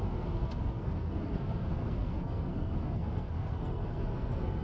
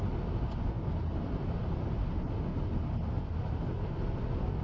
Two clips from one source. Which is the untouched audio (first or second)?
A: second